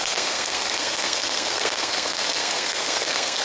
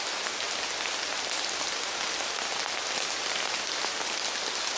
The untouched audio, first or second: second